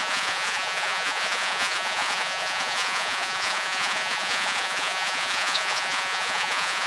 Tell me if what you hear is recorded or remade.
remade